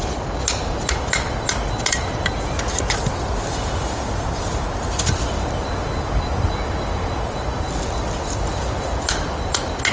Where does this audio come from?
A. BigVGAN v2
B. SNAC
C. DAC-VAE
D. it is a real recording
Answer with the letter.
D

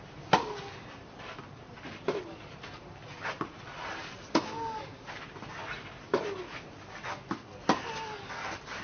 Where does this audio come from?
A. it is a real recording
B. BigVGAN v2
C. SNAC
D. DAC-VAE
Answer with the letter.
A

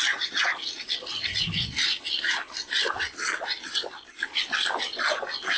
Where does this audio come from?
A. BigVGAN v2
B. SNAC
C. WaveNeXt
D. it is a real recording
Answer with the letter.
D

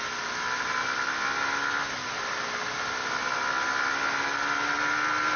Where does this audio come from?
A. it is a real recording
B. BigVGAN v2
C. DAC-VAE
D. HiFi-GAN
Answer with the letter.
A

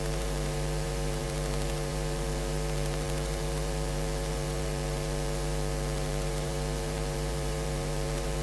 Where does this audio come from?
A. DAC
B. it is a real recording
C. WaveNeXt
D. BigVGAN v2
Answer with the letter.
D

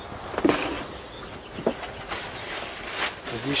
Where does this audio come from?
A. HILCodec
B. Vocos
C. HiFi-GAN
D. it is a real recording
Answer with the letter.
D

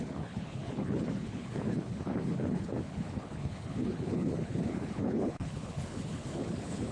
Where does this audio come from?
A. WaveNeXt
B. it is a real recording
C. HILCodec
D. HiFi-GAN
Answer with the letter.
C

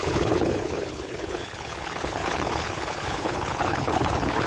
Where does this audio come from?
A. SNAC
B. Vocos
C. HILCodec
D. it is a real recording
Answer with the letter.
C